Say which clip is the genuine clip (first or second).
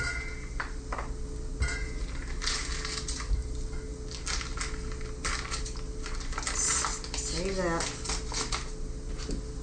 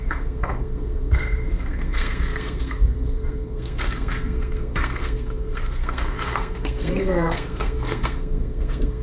first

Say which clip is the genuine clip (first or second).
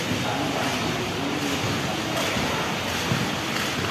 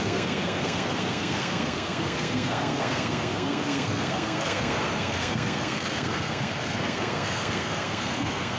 first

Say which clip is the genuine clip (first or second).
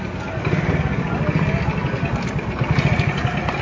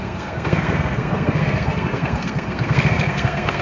first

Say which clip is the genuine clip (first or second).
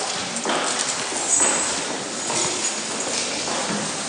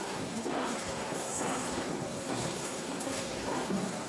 first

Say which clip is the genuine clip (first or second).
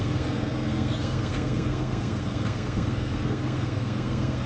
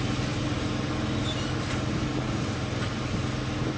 second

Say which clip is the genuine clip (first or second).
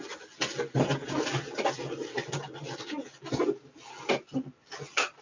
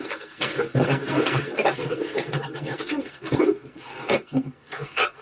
first